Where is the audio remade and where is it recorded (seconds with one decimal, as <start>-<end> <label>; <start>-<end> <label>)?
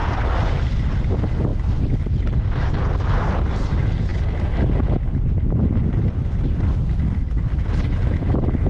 0.0-0.9 remade; 0.9-8.7 recorded